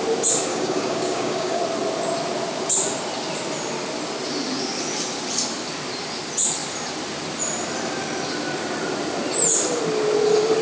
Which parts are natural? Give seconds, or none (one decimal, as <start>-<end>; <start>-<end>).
0.0-0.5; 1.6-10.6